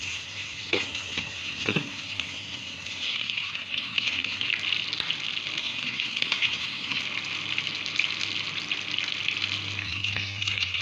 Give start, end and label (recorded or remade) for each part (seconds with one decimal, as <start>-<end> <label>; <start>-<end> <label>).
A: 0.0-4.5 remade; 4.5-5.6 recorded; 5.6-7.0 remade; 7.0-9.8 recorded; 9.8-10.8 remade